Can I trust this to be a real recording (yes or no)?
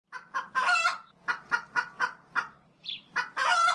yes